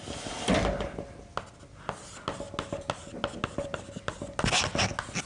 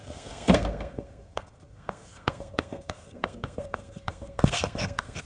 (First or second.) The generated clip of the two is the second